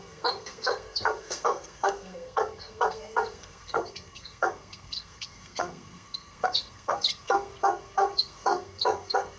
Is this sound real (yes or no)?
no